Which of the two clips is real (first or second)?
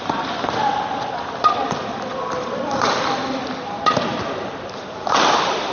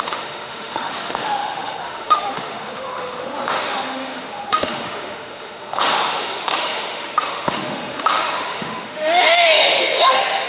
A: first